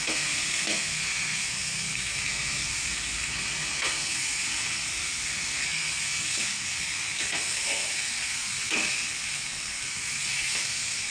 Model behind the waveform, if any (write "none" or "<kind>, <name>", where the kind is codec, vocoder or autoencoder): codec, SNAC